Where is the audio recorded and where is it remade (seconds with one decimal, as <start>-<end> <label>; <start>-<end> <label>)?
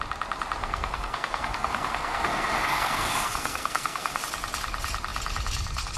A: 0.0-0.6 recorded; 0.6-4.2 remade; 4.2-6.0 recorded